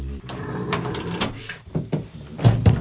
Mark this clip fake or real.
fake